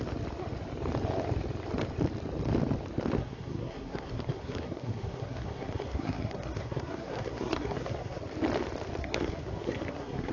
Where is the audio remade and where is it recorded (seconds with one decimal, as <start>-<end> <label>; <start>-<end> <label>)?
0.0-3.2 recorded; 3.2-8.2 remade; 8.2-9.0 recorded; 9.0-10.3 remade